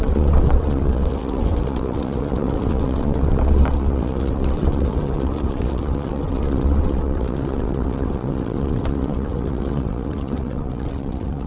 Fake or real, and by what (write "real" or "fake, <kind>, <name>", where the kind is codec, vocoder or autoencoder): fake, vocoder, WaveNeXt